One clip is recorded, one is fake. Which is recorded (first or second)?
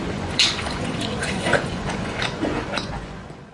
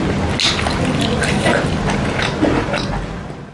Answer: second